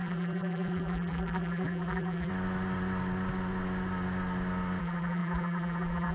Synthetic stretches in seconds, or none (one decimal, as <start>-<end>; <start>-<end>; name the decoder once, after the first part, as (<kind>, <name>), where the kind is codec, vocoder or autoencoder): 0.0-2.3 (vocoder, BigVGAN v2); 4.8-6.1